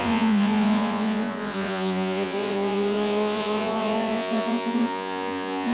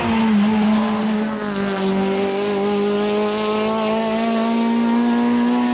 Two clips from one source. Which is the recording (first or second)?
second